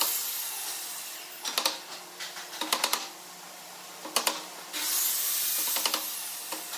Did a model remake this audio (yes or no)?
no